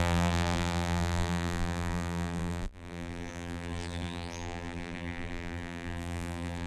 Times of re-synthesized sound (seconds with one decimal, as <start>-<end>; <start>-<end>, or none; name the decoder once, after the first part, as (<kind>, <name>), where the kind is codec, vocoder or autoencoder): 0.0-6.7 (vocoder, BigVGAN v2)

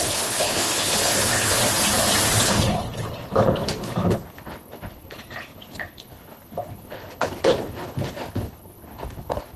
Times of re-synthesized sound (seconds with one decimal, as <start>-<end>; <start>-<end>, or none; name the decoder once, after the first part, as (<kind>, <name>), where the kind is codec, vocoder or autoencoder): 0.0-1.6 (codec, HILCodec); 2.4-9.6

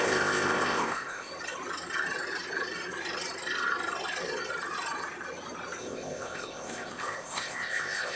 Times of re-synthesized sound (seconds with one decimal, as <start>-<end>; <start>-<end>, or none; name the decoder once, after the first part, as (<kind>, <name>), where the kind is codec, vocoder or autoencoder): 0.0-1.3 (codec, ZipCodec); 5.8-8.2

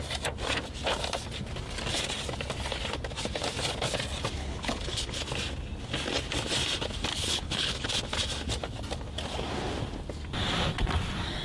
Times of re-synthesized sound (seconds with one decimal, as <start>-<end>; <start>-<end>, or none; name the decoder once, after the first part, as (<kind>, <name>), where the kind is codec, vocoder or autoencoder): 4.4-5.2 (codec, HILCodec); 7.1-7.9

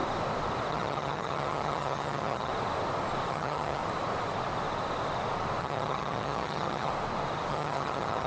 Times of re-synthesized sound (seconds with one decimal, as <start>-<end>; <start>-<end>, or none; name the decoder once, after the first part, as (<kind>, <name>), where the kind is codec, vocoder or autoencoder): 0.7-2.5 (vocoder, HiFi-GAN); 3.3-3.8; 5.6-6.9; 7.5-8.3

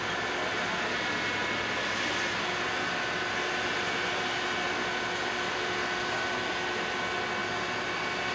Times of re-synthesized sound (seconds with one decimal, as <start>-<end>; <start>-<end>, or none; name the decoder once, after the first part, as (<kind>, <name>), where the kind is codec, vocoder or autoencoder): none